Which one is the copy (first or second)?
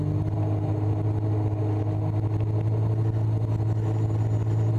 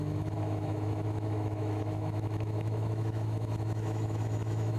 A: second